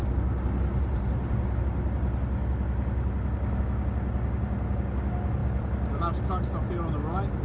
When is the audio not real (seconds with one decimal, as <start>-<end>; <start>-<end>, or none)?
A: none